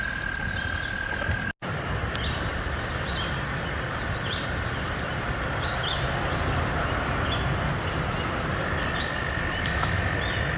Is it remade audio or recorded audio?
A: recorded